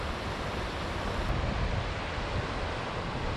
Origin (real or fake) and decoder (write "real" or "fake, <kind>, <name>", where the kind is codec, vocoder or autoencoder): real